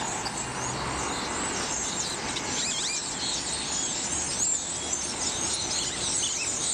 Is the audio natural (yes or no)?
yes